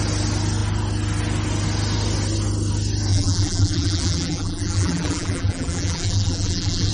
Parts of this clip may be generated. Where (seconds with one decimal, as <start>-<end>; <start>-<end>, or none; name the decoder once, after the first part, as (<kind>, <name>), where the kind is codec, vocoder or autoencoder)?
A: 3.1-6.9 (vocoder, BigVGAN v2)